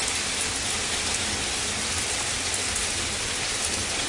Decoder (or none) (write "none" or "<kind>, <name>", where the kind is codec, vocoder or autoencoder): none